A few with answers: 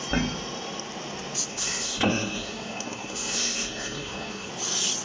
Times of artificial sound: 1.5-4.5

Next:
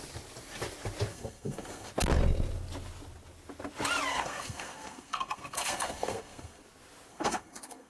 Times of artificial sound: 1.1-1.9; 4.1-6.6; 7.1-7.9